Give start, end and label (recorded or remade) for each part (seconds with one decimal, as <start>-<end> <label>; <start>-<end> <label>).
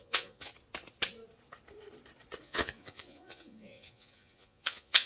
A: 0.0-0.5 remade; 0.5-2.4 recorded; 2.4-5.1 remade